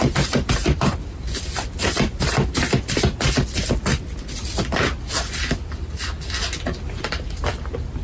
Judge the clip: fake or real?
real